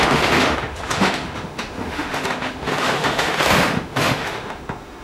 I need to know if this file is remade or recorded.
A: remade